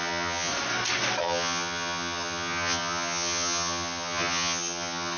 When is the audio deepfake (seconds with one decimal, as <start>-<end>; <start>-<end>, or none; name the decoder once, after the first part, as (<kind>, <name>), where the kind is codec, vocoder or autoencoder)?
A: 0.0-0.5 (vocoder, HiFi-GAN); 1.2-5.2